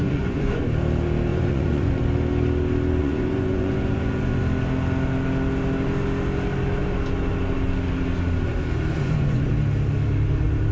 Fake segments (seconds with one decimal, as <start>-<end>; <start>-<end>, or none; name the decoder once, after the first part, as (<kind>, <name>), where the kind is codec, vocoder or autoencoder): 0.0-0.6 (vocoder, Vocos); 1.3-2.0; 3.0-4.4; 8.9-9.5